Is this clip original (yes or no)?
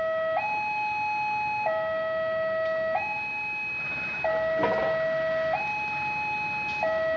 yes